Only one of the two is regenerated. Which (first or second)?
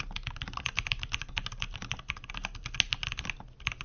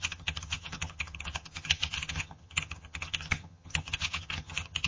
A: second